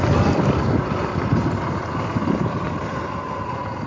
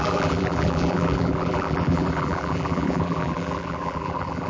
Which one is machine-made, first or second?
second